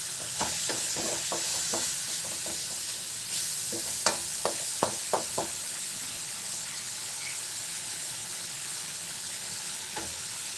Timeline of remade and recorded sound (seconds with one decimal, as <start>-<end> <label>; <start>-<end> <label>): 0.0-1.5 remade; 1.5-4.3 recorded; 4.3-10.6 remade